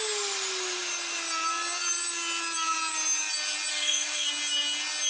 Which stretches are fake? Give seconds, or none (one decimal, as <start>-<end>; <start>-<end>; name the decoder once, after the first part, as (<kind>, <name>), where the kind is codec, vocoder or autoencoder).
3.7-4.3 (codec, SNAC)